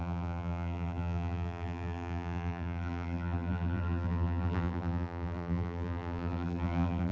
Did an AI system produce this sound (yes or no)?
yes